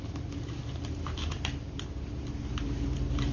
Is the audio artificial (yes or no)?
yes